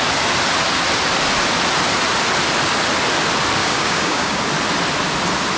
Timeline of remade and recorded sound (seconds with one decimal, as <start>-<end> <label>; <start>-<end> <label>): 0.0-3.6 recorded; 3.6-4.4 remade; 4.4-5.6 recorded